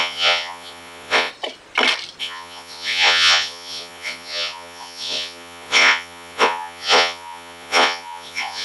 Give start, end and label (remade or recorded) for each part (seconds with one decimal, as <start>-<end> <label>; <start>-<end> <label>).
0.0-1.3 remade; 1.3-2.2 recorded; 2.2-8.6 remade